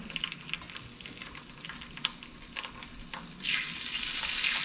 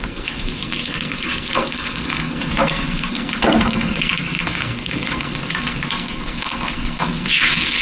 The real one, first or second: first